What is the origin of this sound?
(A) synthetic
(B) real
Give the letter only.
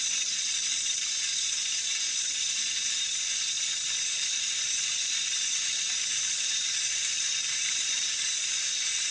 A